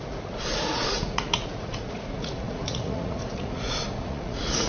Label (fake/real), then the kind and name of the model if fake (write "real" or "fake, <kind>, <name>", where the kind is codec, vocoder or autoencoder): fake, vocoder, Vocos